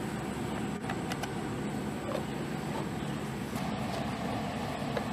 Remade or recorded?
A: recorded